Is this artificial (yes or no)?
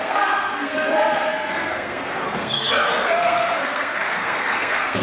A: yes